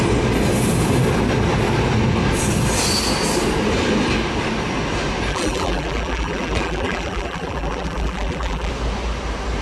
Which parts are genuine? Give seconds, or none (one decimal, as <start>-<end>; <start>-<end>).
0.0-5.3; 8.7-9.6